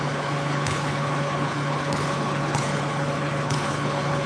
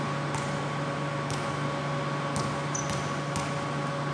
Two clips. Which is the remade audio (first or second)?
first